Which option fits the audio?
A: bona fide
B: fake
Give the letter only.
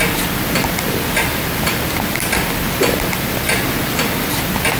A